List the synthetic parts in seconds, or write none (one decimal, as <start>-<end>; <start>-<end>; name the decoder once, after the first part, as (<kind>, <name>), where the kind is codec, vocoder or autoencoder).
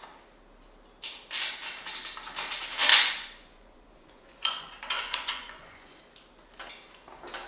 2.9-6.0 (vocoder, Vocos)